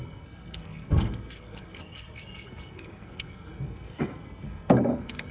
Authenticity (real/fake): fake